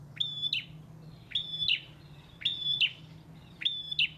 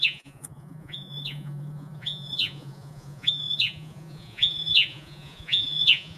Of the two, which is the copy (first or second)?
second